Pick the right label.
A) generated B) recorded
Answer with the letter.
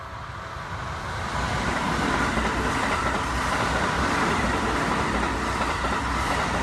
B